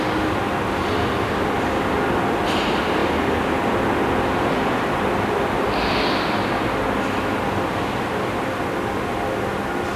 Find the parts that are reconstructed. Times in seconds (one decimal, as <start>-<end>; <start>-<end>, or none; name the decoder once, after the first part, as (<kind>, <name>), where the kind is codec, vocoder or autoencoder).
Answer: none